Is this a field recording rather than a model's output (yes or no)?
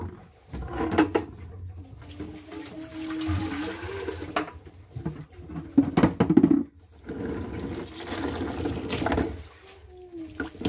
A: yes